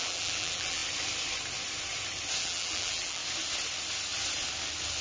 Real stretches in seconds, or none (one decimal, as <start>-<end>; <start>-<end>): 0.8-2.4; 3.2-5.0